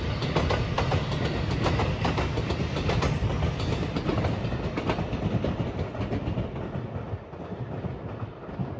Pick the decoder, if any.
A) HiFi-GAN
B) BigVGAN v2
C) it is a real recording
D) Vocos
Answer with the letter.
C